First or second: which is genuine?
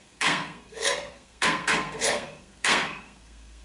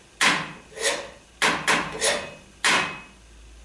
second